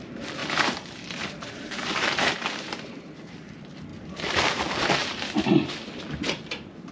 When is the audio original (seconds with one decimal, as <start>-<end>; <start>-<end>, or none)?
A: 0.4-1.5; 3.9-4.4; 5.0-6.0